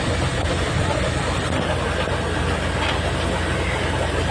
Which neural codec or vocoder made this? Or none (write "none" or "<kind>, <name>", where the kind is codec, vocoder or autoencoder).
none